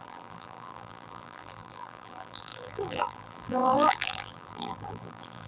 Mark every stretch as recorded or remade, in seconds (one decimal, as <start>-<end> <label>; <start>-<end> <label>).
0.0-5.5 remade